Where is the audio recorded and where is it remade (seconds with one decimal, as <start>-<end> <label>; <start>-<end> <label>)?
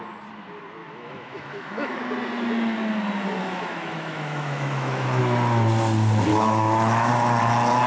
0.0-0.8 recorded; 0.8-2.0 remade; 2.0-3.4 recorded; 3.4-5.2 remade; 5.2-6.3 recorded; 6.3-7.1 remade; 7.1-7.9 recorded